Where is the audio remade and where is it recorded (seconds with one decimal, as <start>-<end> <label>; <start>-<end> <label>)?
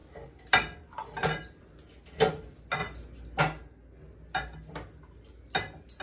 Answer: 0.0-6.0 recorded